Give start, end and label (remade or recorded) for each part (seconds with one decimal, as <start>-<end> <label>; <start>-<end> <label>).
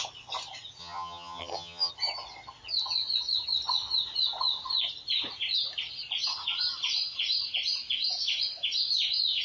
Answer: 0.0-0.8 recorded; 0.8-1.9 remade; 1.9-9.4 recorded